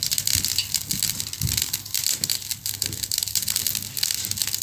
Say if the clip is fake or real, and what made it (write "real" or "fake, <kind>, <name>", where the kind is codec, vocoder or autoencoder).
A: real